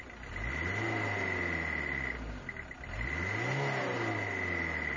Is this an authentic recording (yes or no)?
yes